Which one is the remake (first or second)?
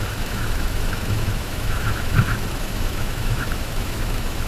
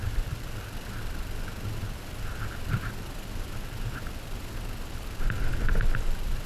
first